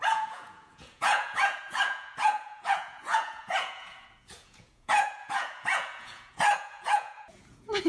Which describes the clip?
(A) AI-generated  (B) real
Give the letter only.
A